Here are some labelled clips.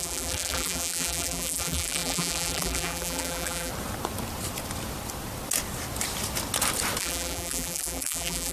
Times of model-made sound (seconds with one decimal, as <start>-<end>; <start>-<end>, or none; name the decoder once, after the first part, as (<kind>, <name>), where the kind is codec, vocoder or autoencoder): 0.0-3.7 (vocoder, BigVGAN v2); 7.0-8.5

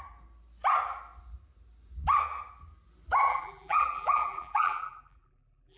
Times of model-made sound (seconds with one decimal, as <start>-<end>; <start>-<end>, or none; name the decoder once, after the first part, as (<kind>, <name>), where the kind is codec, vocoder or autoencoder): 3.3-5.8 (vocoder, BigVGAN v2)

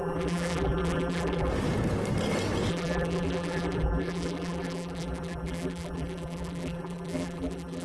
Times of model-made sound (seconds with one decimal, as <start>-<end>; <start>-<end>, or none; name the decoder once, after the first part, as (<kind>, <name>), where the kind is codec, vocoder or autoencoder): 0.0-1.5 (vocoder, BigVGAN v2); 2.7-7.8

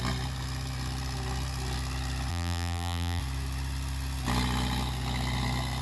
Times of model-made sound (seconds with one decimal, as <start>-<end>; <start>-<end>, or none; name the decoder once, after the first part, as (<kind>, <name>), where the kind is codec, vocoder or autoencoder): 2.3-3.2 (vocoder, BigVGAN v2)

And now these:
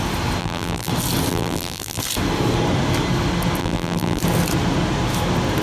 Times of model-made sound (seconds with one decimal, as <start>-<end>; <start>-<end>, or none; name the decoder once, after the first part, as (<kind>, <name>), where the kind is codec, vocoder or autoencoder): 0.4-0.9 (vocoder, BigVGAN v2); 1.3-2.0; 3.6-4.2